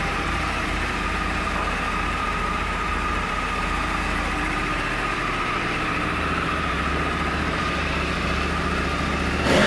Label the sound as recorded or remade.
remade